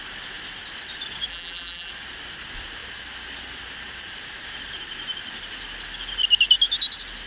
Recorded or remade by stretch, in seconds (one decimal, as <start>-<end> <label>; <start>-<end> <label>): 0.0-1.3 recorded; 1.3-1.9 remade; 1.9-7.3 recorded